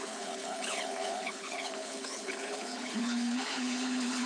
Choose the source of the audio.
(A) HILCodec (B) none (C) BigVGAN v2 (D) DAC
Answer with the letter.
A